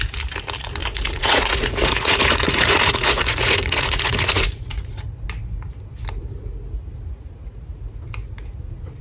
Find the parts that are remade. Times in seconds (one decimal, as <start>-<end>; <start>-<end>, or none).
0.8-5.3